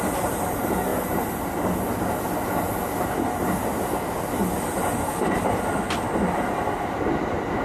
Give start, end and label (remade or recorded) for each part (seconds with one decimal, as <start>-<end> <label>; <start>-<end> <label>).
0.0-0.9 remade; 0.9-5.2 recorded; 5.2-7.6 remade